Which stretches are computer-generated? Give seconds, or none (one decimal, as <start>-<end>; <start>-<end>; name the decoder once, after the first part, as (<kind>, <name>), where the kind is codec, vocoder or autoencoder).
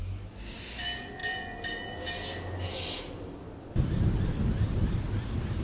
none